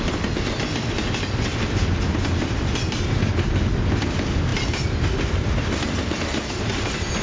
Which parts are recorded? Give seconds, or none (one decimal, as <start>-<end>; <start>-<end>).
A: 0.0-1.5; 2.7-7.2